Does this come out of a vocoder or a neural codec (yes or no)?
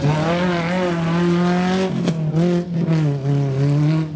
no